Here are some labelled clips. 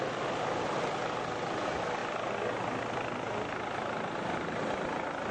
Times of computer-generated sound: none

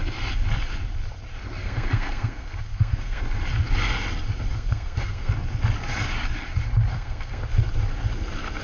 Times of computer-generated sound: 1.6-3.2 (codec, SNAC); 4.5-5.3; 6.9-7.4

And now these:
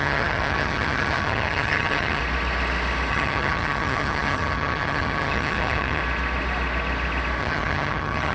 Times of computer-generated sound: 0.0-2.2 (vocoder, HiFi-GAN); 3.1-6.0; 7.4-8.3

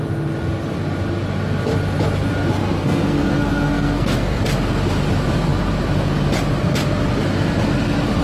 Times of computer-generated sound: 2.6-4.4 (codec, SNAC)

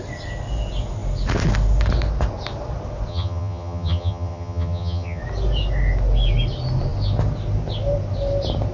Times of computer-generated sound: 3.1-5.2 (vocoder, HiFi-GAN)